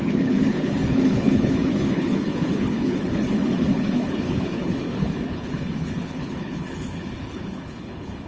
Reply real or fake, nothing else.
fake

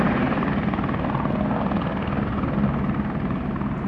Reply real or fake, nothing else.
real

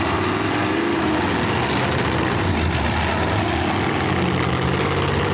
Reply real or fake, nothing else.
real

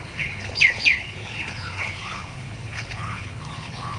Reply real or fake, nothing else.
fake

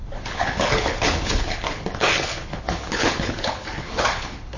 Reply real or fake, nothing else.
fake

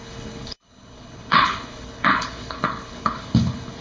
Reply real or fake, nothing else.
fake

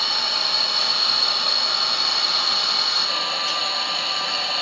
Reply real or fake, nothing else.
real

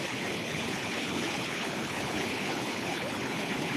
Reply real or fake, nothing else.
fake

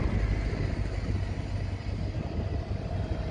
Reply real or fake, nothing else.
real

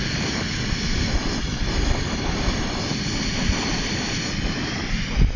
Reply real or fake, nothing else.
real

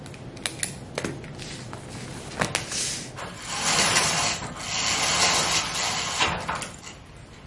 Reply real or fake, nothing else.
real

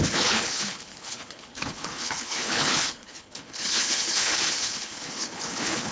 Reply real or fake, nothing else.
fake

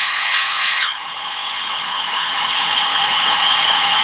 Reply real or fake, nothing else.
fake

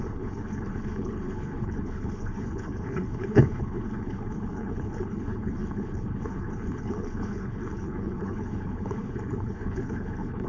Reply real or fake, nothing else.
fake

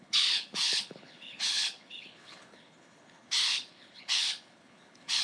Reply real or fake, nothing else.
fake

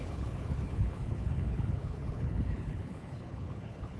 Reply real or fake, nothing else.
fake